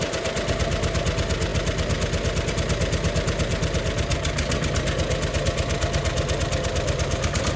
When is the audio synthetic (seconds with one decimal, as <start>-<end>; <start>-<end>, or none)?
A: none